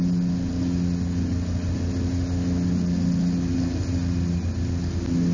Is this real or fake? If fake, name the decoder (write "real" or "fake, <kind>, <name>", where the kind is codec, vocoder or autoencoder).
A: real